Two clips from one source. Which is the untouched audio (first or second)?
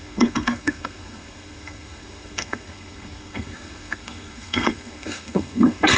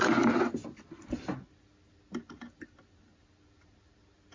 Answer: second